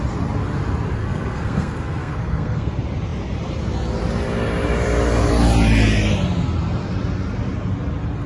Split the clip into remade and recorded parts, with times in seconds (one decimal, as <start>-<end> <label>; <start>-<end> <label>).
0.0-1.0 recorded; 1.0-2.7 remade; 2.7-8.3 recorded